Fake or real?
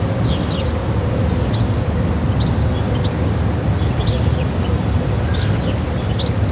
real